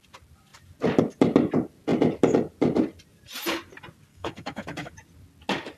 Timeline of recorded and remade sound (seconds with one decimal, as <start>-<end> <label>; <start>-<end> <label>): 0.0-4.1 recorded; 4.1-4.9 remade; 4.9-5.8 recorded